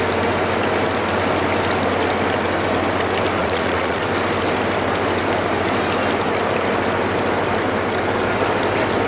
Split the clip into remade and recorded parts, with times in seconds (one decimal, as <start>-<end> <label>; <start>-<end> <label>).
0.0-3.4 recorded; 3.4-4.0 remade; 4.0-9.1 recorded